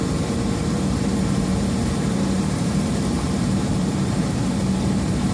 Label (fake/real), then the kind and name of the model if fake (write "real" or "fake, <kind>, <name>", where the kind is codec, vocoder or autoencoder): fake, vocoder, BigVGAN v2